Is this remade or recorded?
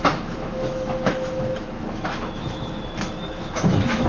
remade